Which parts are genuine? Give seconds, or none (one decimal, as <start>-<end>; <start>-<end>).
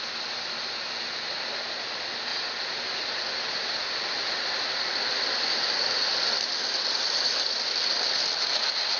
0.0-9.0